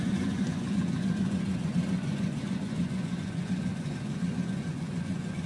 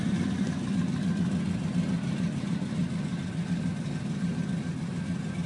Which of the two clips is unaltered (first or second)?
second